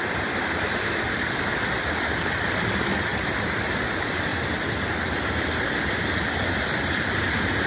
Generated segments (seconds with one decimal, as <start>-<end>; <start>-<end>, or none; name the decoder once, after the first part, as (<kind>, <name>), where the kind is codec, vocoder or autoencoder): none